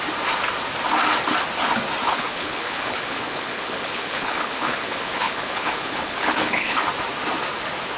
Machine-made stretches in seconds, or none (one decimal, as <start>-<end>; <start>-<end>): 2.0-6.8